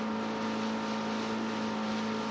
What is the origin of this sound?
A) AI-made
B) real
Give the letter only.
B